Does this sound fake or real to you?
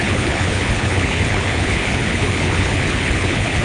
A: fake